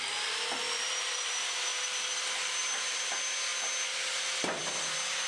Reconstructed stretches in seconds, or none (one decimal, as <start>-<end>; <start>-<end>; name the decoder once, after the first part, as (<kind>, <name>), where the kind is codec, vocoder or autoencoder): none